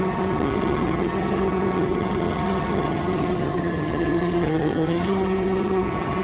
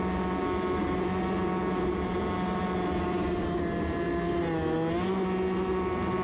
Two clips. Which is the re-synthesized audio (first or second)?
first